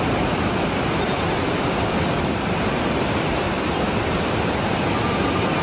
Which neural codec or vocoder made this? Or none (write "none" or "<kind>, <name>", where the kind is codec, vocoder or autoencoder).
vocoder, BigVGAN v2